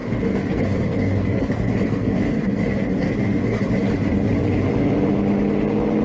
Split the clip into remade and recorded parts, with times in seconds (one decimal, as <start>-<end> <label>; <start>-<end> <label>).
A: 0.0-3.6 remade; 3.6-6.0 recorded